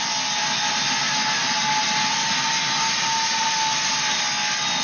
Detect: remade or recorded recorded